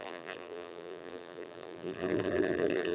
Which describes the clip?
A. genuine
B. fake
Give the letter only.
B